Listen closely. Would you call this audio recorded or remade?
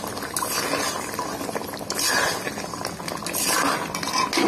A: recorded